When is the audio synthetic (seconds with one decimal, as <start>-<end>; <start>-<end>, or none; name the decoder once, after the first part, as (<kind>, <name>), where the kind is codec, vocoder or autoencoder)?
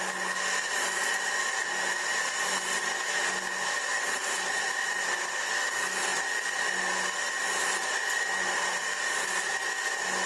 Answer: none